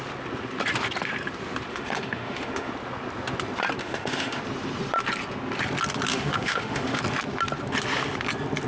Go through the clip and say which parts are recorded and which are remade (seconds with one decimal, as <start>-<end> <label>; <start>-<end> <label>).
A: 0.0-1.7 recorded; 1.7-2.7 remade; 2.7-3.8 recorded; 3.8-4.4 remade; 4.4-6.1 recorded; 6.1-7.0 remade; 7.0-8.7 recorded